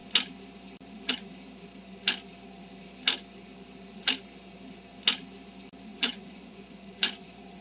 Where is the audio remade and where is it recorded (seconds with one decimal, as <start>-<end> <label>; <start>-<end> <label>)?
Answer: 0.0-5.9 recorded; 5.9-7.6 remade